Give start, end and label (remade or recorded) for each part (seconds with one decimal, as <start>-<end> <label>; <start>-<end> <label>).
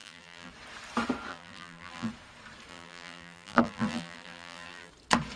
0.0-0.5 remade; 0.5-1.3 recorded; 1.3-2.1 remade; 2.1-2.7 recorded; 2.7-4.9 remade; 4.9-5.4 recorded